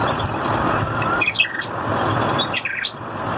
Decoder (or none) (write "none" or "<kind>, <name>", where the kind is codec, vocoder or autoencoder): none